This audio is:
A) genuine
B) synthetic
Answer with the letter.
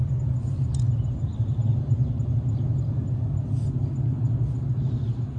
A